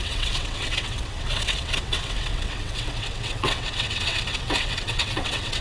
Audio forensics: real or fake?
fake